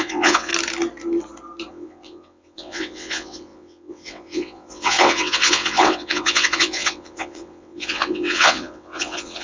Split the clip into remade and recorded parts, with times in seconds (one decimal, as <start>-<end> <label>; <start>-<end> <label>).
0.0-0.5 remade; 0.5-1.7 recorded; 1.7-9.4 remade